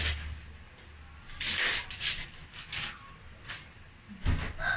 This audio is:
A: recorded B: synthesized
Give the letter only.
A